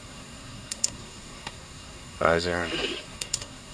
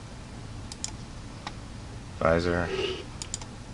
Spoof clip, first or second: first